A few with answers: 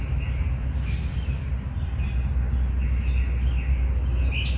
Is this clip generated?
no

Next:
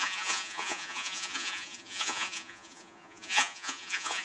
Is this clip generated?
yes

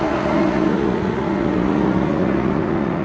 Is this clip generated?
yes